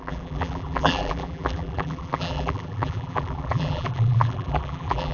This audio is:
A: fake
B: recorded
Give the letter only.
A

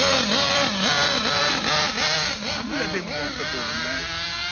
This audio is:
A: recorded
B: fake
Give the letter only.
A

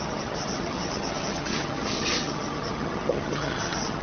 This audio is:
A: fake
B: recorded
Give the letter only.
A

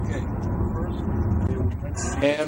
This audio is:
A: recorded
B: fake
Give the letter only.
A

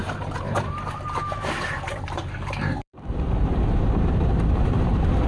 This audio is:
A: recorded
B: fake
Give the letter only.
B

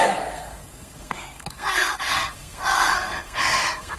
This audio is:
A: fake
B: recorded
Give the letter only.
A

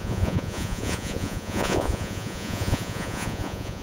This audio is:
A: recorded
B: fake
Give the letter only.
B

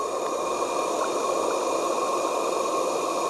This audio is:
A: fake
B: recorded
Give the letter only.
B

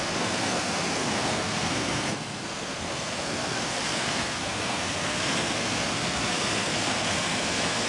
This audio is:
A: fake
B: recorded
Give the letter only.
A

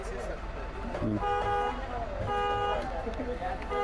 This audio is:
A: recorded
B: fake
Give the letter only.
A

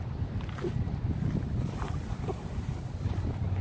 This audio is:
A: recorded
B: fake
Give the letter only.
A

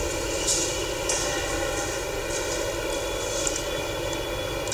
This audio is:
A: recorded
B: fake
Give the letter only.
A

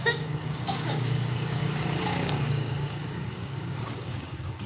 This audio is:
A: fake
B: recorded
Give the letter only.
A